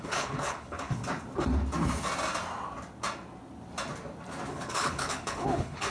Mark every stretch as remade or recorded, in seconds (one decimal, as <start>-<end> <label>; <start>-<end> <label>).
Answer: 0.0-1.0 remade; 1.0-4.5 recorded; 4.5-5.9 remade